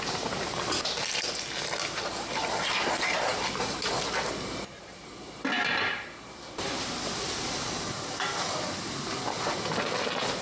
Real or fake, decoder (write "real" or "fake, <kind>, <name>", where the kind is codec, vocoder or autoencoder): real